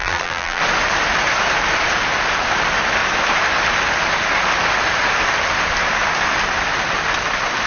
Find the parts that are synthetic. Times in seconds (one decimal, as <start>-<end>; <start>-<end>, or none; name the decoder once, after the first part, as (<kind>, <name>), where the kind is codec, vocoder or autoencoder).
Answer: 0.0-0.6 (vocoder, BigVGAN v2)